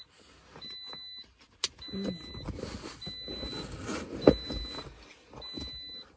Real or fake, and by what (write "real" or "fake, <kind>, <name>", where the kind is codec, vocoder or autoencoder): real